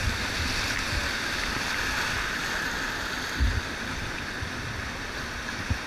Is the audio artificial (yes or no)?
no